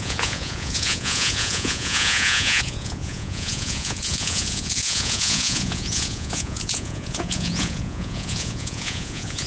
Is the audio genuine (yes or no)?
no